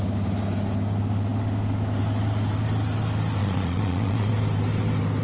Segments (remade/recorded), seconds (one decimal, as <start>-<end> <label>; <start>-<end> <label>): 0.0-3.4 recorded; 3.4-4.3 remade; 4.3-5.2 recorded